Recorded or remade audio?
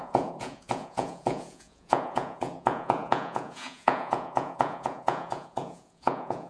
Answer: remade